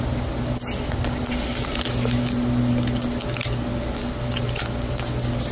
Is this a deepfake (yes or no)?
no